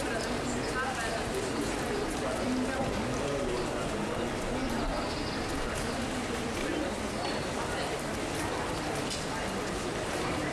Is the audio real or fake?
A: real